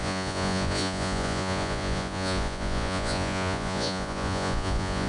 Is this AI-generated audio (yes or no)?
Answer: yes